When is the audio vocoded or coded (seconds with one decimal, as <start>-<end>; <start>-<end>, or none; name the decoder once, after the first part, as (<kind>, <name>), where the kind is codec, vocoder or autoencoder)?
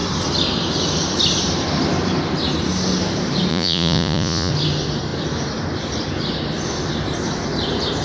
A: 3.5-4.5 (vocoder, Vocos)